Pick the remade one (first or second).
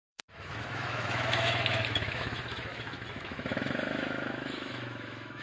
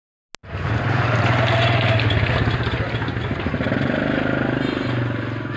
first